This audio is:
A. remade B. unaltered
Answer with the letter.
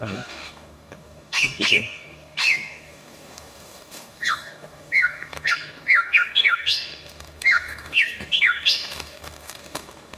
A